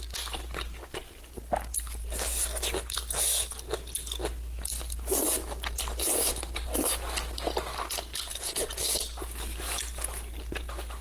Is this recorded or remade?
recorded